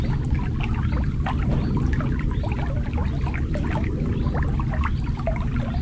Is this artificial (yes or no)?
no